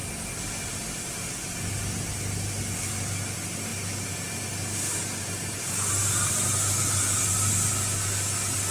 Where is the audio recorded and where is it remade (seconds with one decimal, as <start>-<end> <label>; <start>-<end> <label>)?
0.0-8.7 recorded